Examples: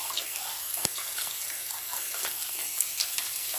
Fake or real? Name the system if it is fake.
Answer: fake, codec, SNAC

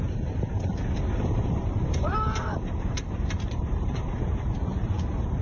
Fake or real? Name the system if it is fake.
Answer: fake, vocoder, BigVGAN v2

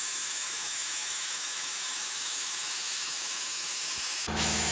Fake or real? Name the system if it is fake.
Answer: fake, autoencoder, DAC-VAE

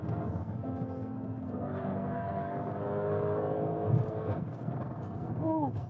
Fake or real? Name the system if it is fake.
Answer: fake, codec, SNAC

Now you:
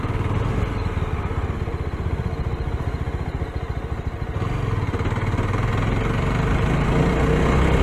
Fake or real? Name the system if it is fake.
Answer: real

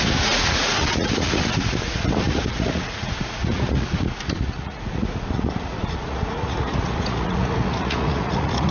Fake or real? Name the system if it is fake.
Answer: fake, vocoder, Vocos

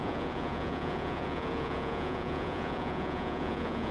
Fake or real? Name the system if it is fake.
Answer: fake, vocoder, Vocos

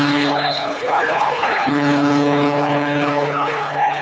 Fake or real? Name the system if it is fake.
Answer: fake, codec, HILCodec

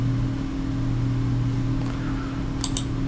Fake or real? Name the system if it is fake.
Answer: real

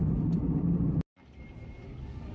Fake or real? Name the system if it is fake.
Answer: real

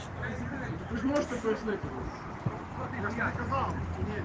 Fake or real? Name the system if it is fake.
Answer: fake, vocoder, BigVGAN v2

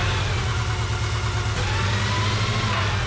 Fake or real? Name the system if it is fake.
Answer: real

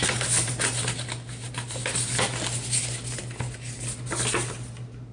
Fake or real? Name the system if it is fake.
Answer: real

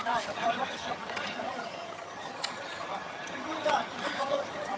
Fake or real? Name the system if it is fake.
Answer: fake, vocoder, HiFi-GAN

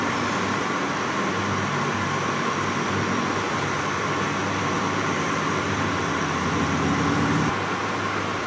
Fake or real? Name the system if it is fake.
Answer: real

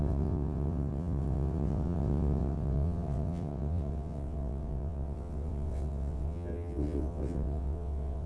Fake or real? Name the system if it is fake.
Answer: fake, vocoder, WaveNeXt